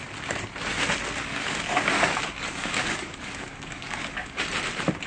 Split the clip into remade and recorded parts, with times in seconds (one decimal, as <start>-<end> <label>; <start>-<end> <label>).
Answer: 0.0-1.3 recorded; 1.3-4.4 remade; 4.4-5.1 recorded